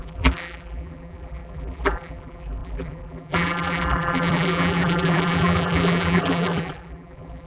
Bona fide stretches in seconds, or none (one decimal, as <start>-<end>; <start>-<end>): none